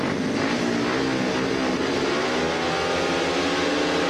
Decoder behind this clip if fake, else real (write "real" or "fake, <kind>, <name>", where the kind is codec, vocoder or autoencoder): real